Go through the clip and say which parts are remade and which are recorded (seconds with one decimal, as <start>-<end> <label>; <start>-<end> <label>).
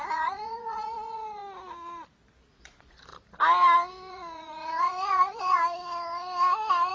0.0-1.4 remade; 1.4-2.6 recorded; 2.6-3.1 remade; 3.1-4.1 recorded; 4.1-5.6 remade; 5.6-6.9 recorded